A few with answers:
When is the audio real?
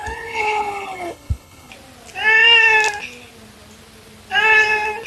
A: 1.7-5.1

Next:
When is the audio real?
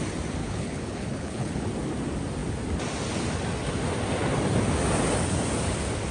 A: 0.0-0.4; 1.7-6.1